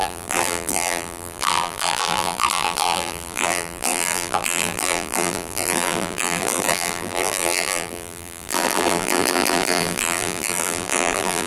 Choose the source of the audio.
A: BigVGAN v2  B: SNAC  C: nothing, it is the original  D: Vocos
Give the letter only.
A